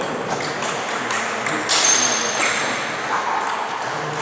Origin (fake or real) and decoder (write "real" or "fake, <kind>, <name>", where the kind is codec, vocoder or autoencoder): real